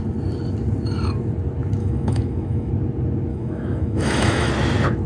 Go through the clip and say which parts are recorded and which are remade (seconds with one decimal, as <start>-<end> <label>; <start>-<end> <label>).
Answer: 0.0-1.8 recorded; 1.8-2.7 remade; 2.7-3.3 recorded; 3.3-4.5 remade; 4.5-5.1 recorded